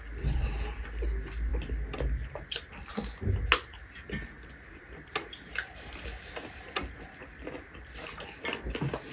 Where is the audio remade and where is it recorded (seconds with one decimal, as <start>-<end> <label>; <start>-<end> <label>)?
0.0-9.1 recorded